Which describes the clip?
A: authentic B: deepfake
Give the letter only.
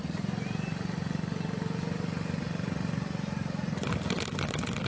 A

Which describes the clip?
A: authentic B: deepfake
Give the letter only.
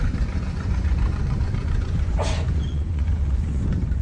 B